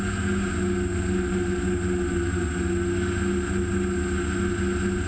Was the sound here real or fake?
real